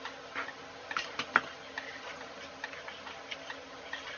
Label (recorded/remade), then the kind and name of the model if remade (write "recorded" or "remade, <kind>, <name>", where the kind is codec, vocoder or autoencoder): recorded